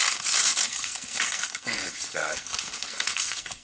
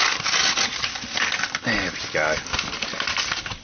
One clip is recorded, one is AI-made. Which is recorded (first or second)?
second